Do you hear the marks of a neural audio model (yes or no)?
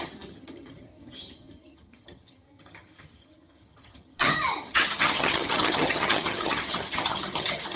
yes